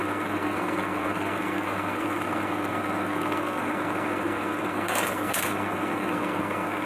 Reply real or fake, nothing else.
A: fake